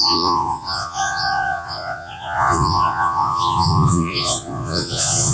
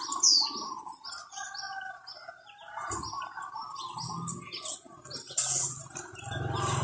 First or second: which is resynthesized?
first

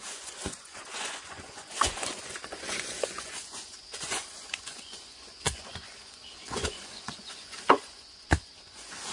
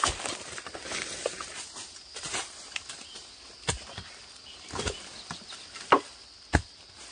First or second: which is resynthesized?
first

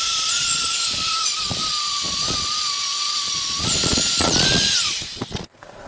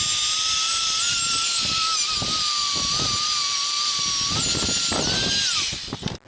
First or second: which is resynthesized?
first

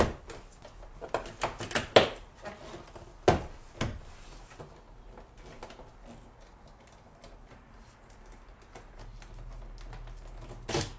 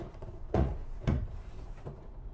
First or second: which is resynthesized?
second